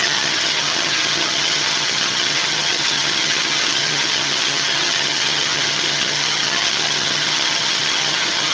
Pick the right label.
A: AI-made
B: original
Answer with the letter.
A